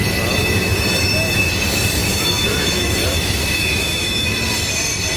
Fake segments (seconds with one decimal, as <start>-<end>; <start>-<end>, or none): 0.4-1.5; 2.0-4.3